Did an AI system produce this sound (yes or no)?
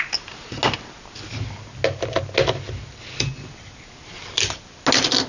no